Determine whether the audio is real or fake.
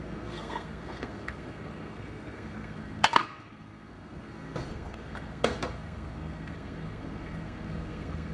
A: fake